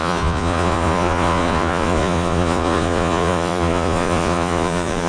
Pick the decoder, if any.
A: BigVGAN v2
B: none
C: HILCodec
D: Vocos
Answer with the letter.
D